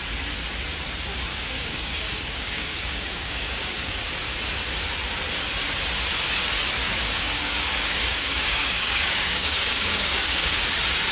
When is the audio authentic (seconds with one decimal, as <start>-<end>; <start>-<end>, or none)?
0.0-1.3; 3.9-6.8; 10.6-11.1